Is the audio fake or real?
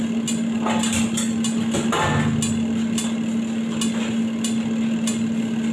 real